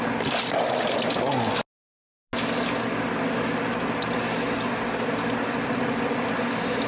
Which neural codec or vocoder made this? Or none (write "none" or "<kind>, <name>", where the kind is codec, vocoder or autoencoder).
none